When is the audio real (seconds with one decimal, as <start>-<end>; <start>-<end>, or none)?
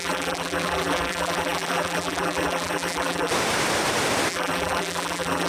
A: 3.3-4.3